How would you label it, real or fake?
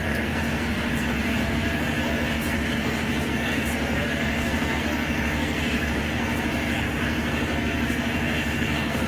fake